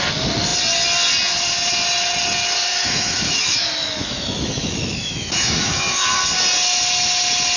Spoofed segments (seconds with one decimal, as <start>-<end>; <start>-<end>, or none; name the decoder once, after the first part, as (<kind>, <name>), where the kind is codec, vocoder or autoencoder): 2.7-6.2 (autoencoder, DAC-VAE)